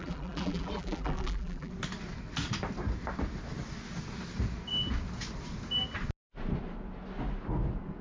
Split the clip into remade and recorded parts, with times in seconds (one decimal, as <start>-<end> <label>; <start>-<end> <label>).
0.0-1.7 remade; 1.7-8.0 recorded